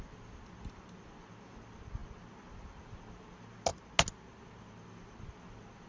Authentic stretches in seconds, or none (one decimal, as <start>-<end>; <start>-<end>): 0.0-5.9